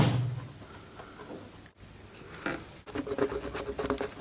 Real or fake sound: real